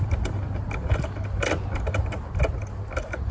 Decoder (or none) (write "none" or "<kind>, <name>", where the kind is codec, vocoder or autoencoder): none